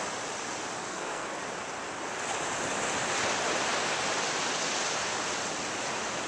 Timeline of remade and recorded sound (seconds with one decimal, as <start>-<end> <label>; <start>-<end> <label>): 0.0-0.8 recorded; 0.8-1.4 remade; 1.4-6.3 recorded